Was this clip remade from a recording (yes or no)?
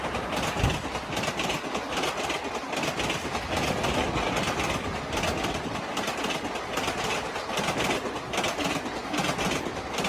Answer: no